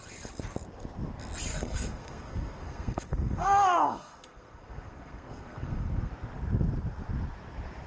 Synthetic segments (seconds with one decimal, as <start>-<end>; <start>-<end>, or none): 1.5-6.1